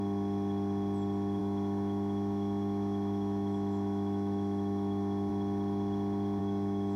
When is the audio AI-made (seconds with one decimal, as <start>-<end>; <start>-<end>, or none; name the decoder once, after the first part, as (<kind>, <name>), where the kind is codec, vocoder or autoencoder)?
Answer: 1.4-5.3 (autoencoder, DAC-VAE); 6.4-7.0